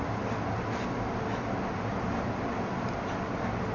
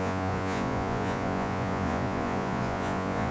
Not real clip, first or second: second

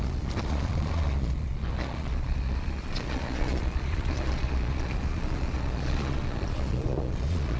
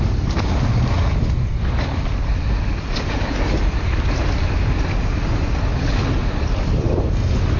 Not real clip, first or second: first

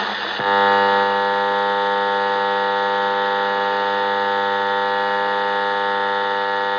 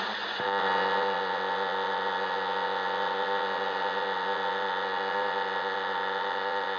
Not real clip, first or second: second